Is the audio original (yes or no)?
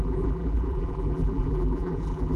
no